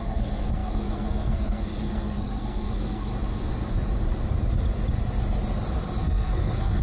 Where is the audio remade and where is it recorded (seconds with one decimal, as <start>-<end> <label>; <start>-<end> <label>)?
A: 0.0-3.1 remade; 3.1-6.0 recorded; 6.0-6.8 remade